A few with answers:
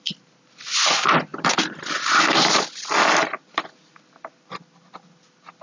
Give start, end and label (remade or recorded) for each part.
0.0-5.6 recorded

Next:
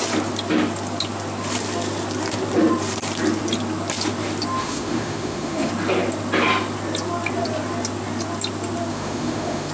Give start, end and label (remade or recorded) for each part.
0.0-4.6 recorded; 4.6-5.7 remade; 5.7-8.9 recorded; 8.9-9.7 remade

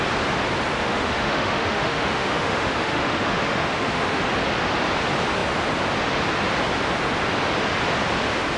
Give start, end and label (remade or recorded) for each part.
0.0-0.8 recorded; 0.8-4.2 remade; 4.2-8.6 recorded